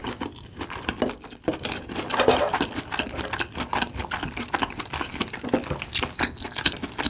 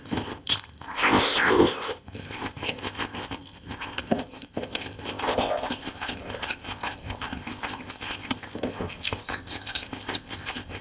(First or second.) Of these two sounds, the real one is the first